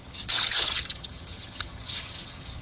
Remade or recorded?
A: remade